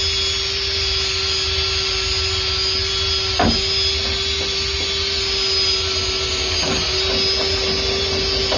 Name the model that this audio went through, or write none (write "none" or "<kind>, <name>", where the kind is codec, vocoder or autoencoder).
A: none